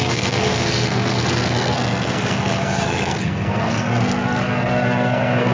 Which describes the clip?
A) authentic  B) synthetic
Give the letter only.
B